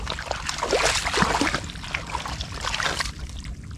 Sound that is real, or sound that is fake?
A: fake